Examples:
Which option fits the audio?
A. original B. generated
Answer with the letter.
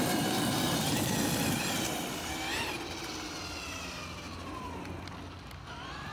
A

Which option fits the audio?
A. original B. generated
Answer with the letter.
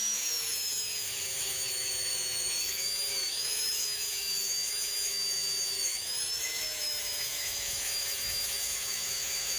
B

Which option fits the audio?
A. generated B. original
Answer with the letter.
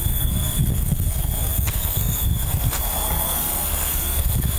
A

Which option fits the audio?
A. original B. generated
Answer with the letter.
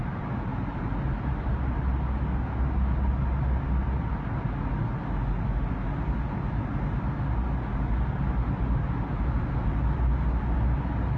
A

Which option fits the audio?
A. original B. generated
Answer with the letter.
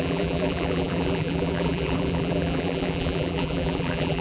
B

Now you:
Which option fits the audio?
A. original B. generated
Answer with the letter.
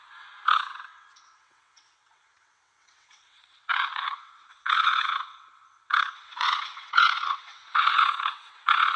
B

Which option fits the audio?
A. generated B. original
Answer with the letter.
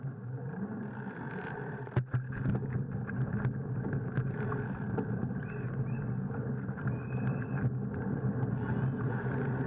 B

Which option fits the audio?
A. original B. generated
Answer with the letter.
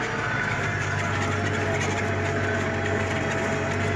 A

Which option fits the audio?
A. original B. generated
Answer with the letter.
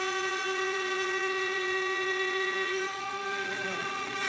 B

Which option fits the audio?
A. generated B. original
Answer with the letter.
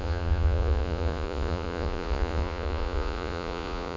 A